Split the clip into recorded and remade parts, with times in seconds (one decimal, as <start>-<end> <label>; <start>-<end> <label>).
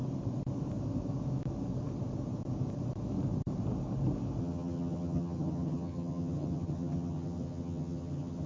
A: 0.0-4.4 recorded; 4.4-8.5 remade